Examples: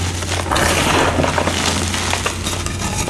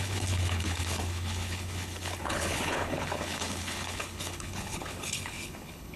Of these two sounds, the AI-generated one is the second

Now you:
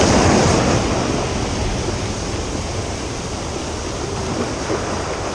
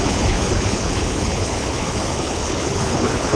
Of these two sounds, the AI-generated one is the second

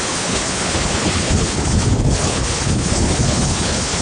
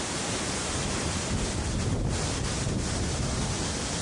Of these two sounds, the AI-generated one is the first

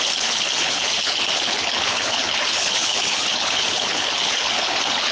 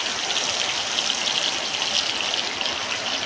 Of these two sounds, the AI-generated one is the first